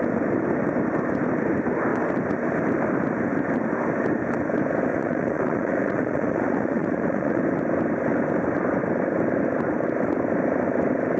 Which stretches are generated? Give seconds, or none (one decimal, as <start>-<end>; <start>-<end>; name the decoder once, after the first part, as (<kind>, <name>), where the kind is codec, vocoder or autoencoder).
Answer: 4.9-7.4 (vocoder, Vocos)